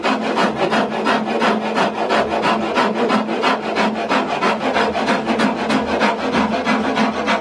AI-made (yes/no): no